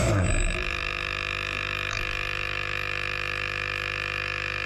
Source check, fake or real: fake